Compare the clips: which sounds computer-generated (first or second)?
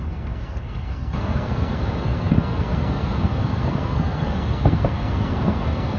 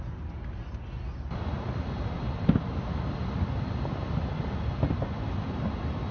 first